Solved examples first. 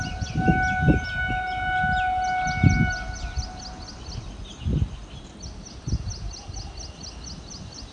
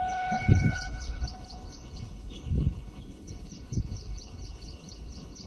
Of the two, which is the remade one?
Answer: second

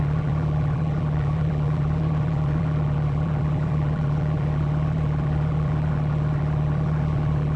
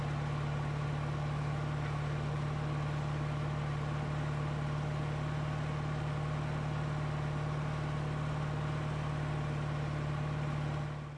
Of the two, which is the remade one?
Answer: first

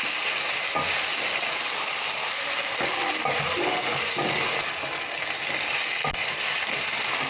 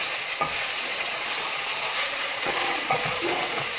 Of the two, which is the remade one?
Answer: second